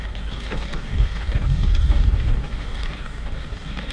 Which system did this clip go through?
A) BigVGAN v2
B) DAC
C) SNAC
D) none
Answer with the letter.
B